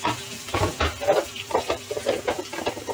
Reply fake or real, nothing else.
fake